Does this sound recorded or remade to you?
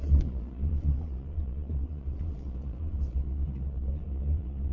remade